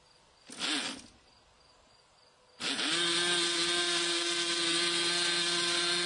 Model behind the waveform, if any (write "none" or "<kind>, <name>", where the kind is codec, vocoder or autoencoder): none